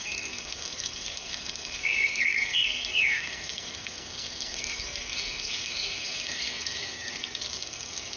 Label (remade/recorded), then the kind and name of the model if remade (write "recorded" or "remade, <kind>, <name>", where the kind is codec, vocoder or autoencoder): remade, codec, SNAC